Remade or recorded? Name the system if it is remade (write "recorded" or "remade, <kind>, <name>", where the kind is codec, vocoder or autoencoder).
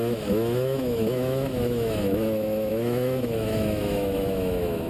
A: remade, autoencoder, DAC-VAE